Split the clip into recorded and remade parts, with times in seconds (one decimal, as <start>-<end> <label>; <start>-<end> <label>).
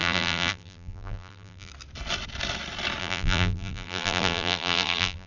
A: 0.0-1.7 remade; 1.7-3.0 recorded; 3.0-5.3 remade